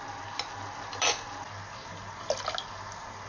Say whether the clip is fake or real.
real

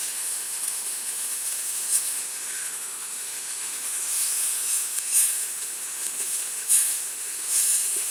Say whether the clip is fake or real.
fake